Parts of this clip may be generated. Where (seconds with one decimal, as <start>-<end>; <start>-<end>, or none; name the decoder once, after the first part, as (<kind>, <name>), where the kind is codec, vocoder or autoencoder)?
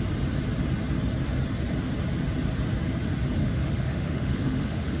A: 3.4-5.0 (autoencoder, DAC-VAE)